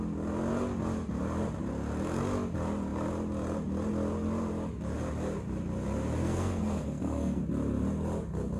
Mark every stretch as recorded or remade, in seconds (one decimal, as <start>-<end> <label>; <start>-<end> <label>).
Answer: 0.0-6.2 recorded; 6.2-7.4 remade; 7.4-8.6 recorded